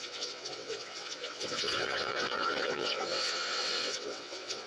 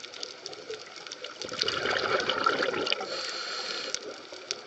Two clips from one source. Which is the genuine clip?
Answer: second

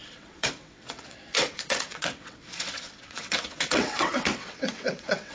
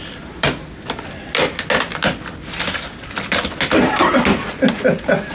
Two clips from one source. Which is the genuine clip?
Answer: second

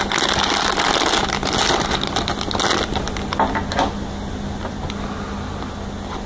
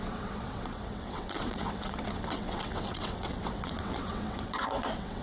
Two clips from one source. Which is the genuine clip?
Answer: first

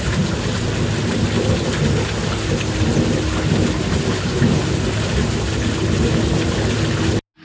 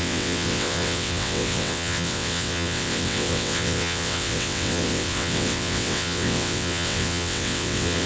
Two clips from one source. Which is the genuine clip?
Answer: first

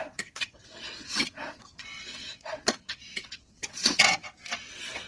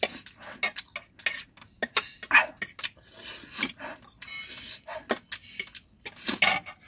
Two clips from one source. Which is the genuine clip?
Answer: second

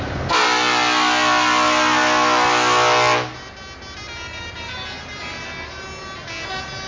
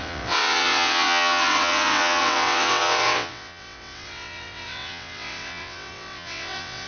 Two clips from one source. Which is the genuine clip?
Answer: first